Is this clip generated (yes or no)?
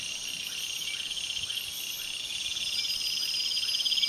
no